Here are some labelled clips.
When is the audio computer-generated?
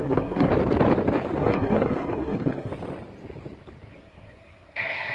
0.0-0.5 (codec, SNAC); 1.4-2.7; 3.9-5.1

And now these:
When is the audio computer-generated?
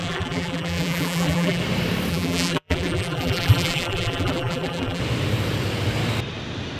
0.0-1.6 (vocoder, BigVGAN v2); 2.1-5.0